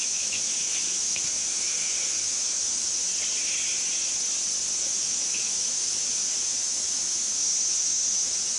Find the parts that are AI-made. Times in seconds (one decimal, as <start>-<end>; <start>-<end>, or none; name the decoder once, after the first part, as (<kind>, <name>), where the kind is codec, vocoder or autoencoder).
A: 0.0-3.1 (autoencoder, DAC-VAE); 4.8-8.6